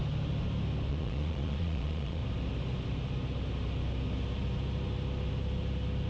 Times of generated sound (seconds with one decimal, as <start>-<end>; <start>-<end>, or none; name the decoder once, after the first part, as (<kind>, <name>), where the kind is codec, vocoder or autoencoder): 0.9-2.2 (vocoder, Vocos)